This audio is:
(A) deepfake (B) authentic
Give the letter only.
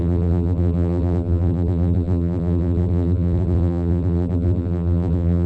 A